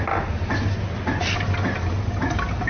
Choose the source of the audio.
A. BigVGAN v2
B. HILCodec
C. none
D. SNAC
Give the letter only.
C